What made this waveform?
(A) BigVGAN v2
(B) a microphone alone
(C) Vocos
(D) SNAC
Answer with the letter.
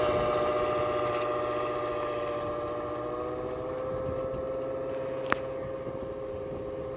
A